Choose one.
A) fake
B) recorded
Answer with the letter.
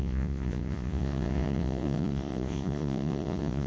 A